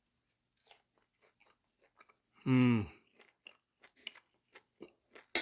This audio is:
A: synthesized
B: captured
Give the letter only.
B